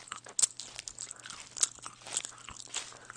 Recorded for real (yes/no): yes